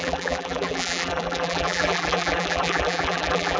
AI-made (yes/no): yes